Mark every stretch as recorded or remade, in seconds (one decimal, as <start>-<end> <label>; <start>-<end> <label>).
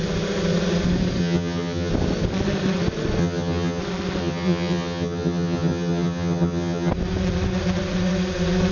0.0-1.2 recorded; 1.2-1.9 remade; 1.9-3.2 recorded; 3.2-3.8 remade; 3.8-4.2 recorded; 4.2-6.9 remade; 6.9-8.7 recorded